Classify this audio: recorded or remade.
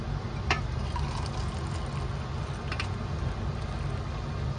recorded